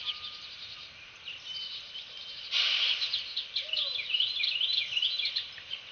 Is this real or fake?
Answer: real